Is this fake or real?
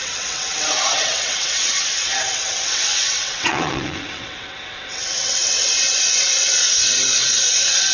fake